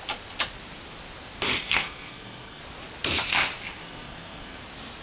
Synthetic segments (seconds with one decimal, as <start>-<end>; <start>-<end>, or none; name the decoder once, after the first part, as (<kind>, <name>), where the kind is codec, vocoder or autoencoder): 1.6-2.6 (codec, SNAC); 3.8-4.6